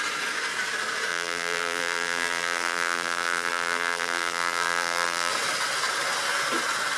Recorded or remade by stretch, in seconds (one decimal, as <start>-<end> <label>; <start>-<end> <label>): 0.0-1.1 recorded; 1.1-5.3 remade; 5.3-7.0 recorded